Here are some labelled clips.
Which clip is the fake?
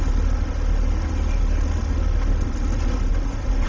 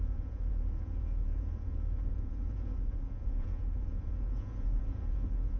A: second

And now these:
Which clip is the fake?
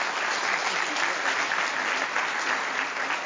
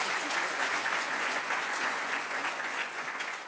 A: second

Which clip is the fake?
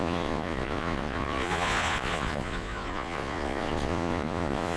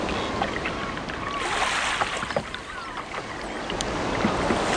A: first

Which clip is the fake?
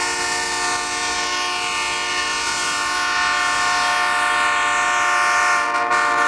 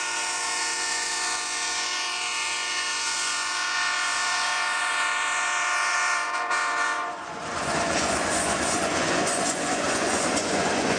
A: second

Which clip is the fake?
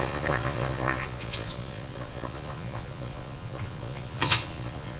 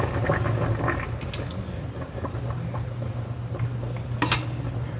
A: first